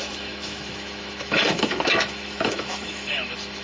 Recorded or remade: remade